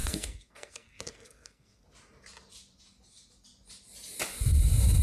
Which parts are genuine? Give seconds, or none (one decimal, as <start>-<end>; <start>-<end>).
1.8-5.0